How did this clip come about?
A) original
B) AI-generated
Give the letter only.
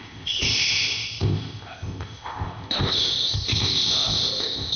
B